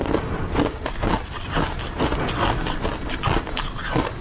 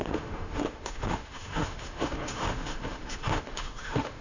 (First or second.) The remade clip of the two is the second